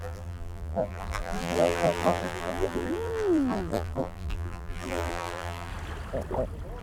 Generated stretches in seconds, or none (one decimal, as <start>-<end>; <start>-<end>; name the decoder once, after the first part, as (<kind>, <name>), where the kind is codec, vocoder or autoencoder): 0.0-5.7 (vocoder, BigVGAN v2)